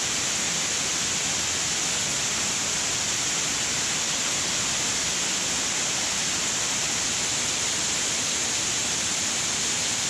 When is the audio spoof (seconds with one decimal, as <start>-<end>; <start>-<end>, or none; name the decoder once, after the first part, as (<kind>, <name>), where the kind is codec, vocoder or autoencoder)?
none